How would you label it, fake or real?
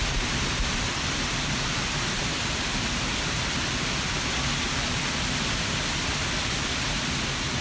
real